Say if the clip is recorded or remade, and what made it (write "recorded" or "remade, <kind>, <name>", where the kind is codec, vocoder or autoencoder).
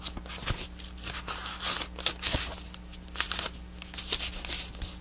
recorded